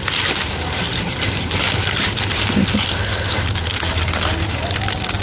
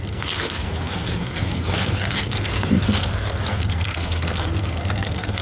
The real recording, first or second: first